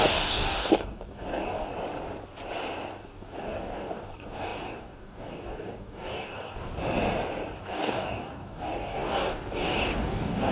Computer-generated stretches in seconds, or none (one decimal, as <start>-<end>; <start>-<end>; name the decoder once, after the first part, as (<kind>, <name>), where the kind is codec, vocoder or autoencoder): 0.0-1.7 (codec, DAC); 2.9-6.7; 7.6-10.5